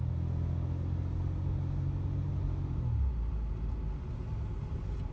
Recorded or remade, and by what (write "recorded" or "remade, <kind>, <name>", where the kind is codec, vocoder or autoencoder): recorded